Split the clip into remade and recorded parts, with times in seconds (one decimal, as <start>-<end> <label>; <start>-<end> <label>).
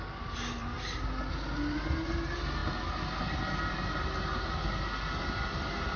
0.0-6.0 recorded